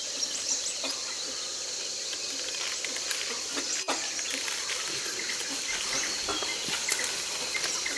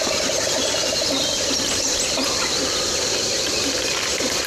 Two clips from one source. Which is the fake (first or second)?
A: second